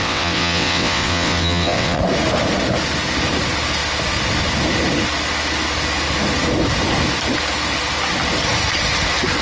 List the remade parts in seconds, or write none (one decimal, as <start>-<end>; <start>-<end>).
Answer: 0.0-2.0